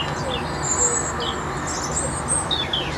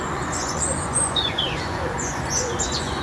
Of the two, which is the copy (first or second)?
second